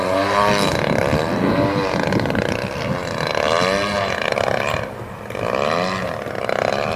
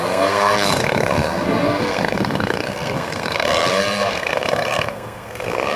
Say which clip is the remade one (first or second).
second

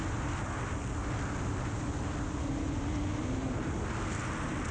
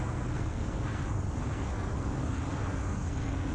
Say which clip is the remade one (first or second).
second